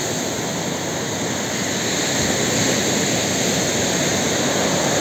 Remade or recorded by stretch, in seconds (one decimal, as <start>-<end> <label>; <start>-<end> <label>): 0.0-5.0 recorded